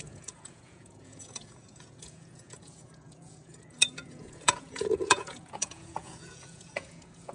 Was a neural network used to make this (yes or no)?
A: yes